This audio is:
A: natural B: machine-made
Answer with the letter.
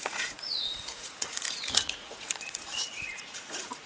B